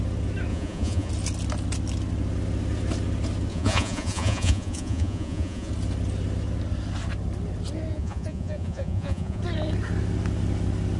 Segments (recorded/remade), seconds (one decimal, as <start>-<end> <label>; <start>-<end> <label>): 0.0-0.5 recorded; 0.5-1.1 remade; 1.1-3.5 recorded; 3.5-5.7 remade; 5.7-7.9 recorded; 7.9-9.4 remade; 9.4-11.0 recorded